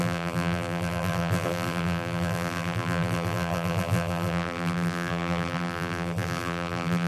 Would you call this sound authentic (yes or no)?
no